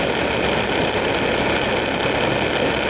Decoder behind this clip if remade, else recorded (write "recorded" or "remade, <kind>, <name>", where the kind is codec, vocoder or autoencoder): recorded